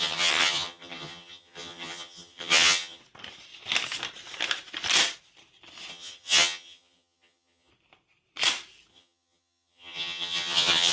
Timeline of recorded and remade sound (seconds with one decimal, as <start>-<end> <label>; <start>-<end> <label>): 0.0-3.0 remade; 3.0-5.9 recorded; 5.9-7.7 remade; 7.7-8.9 recorded; 8.9-10.9 remade